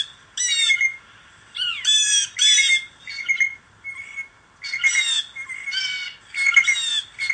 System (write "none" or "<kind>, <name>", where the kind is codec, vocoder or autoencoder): none